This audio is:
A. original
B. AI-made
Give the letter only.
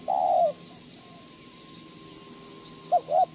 A